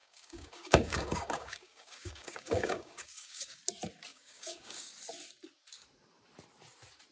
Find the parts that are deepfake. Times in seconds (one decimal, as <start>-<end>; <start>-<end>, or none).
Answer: 0.0-3.6; 4.1-4.9